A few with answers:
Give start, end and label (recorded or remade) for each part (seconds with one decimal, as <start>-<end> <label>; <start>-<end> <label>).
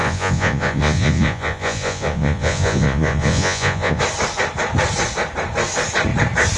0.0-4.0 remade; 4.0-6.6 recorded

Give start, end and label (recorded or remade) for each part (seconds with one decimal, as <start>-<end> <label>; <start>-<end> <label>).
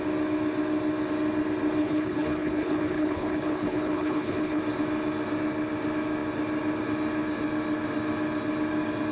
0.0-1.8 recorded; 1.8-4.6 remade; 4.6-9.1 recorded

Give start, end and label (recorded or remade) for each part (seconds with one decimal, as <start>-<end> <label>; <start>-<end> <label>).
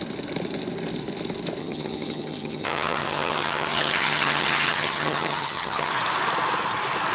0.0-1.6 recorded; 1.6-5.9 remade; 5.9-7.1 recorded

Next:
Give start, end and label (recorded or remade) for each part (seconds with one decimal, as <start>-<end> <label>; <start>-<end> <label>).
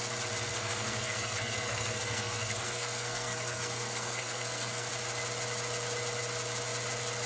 0.0-0.5 recorded; 0.5-4.9 remade; 4.9-7.3 recorded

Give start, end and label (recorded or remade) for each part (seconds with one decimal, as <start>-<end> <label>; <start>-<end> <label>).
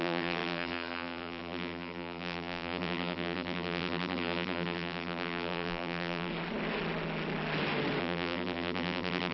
0.0-6.3 remade; 6.3-8.0 recorded; 8.0-9.3 remade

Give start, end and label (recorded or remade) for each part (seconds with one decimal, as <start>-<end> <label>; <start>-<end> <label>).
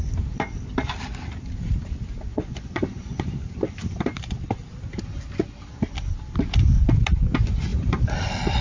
0.0-2.3 recorded; 2.3-3.3 remade; 3.3-8.6 recorded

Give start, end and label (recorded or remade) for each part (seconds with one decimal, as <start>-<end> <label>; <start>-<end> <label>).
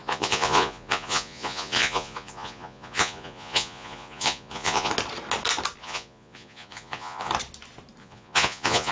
0.0-4.9 remade; 4.9-5.8 recorded; 5.8-7.3 remade; 7.3-8.0 recorded; 8.0-8.9 remade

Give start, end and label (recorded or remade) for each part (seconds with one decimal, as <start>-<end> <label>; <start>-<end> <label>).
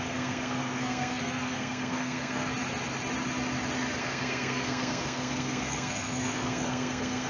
0.0-2.5 remade; 2.5-4.0 recorded; 4.0-7.3 remade